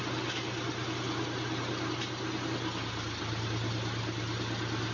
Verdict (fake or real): real